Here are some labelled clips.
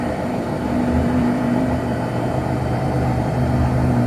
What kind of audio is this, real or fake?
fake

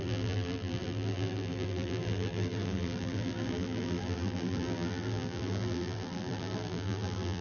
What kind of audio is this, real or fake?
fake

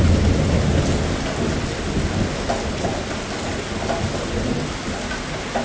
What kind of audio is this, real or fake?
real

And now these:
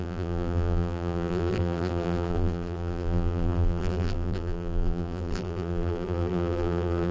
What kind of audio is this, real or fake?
fake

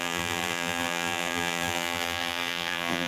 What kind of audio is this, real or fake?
fake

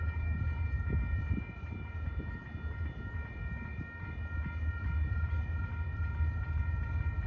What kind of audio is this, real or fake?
real